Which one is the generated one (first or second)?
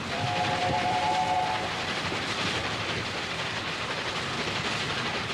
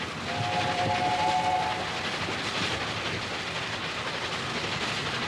first